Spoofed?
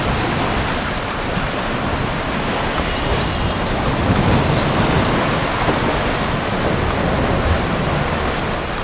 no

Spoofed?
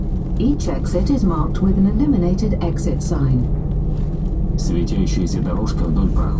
no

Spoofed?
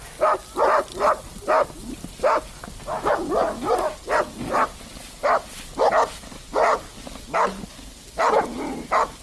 no